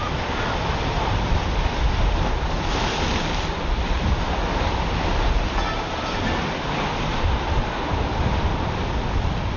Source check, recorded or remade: recorded